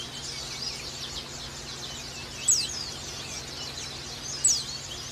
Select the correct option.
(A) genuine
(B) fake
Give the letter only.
A